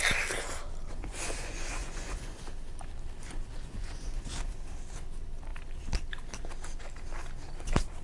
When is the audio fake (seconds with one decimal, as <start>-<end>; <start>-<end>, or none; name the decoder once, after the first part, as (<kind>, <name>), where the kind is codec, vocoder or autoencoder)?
0.9-2.4 (vocoder, Vocos); 3.2-4.5